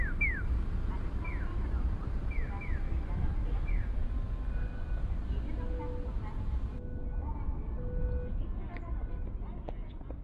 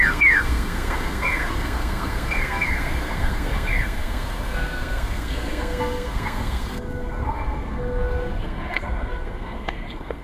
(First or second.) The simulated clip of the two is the second